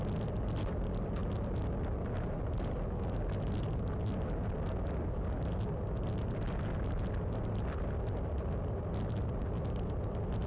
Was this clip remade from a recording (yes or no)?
no